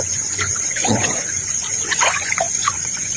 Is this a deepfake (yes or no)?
yes